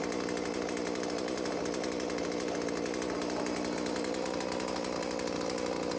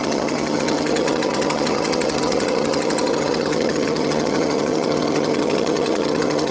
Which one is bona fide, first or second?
first